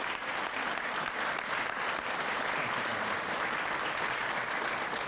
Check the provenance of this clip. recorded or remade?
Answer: recorded